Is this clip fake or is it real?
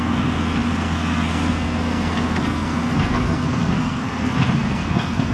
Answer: fake